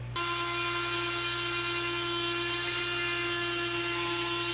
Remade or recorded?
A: recorded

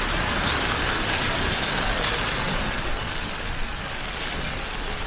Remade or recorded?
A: recorded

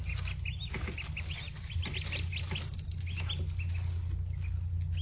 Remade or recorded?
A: recorded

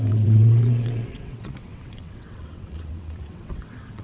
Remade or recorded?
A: remade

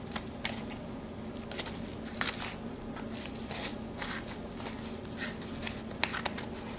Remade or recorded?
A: recorded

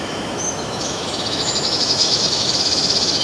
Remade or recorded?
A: remade